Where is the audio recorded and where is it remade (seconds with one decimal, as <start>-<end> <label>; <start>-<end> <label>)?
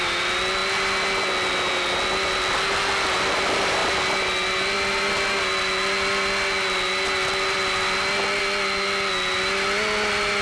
0.0-10.4 recorded